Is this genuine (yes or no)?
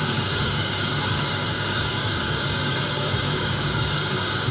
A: no